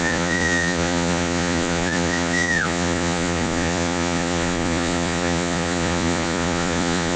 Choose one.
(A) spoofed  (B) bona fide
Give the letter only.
A